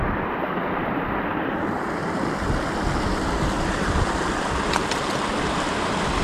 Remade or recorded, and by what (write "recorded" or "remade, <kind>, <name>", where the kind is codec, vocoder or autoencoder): recorded